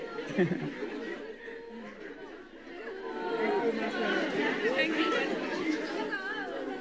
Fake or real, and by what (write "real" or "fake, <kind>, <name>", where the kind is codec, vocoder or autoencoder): real